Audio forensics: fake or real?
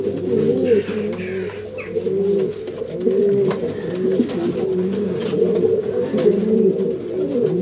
real